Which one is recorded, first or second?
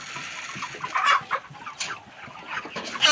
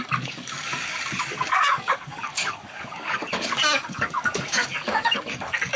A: first